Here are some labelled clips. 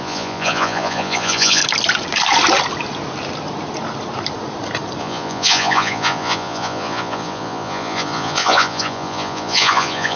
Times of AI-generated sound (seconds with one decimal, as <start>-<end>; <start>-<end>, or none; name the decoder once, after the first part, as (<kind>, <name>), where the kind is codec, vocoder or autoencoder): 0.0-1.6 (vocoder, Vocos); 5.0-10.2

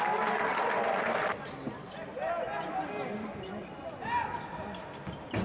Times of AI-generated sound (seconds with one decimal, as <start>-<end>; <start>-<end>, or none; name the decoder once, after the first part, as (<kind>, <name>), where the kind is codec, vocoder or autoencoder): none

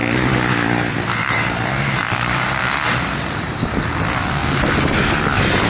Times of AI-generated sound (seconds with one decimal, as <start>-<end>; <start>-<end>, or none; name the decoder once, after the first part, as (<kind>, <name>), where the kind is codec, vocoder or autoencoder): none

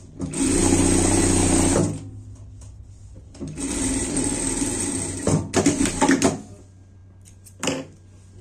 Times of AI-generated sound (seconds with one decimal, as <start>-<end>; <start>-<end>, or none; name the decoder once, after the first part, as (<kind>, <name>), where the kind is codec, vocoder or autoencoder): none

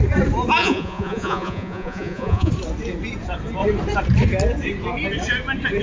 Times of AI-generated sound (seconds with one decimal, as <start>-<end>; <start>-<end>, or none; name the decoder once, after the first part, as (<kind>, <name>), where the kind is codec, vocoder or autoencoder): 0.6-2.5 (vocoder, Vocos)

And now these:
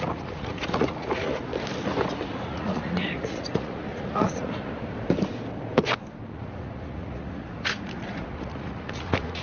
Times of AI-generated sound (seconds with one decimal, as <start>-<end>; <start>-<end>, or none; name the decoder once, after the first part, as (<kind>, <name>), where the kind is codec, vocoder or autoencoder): 0.0-1.5 (vocoder, Vocos); 2.3-4.7; 6.3-9.4